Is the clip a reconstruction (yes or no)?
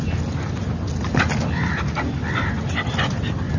no